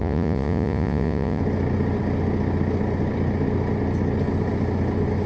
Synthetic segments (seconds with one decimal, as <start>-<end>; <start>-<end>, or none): 0.0-1.4